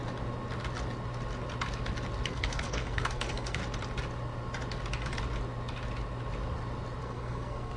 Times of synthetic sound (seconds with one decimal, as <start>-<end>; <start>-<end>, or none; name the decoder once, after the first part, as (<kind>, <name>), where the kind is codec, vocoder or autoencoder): 2.3-3.6 (codec, SNAC); 7.0-7.8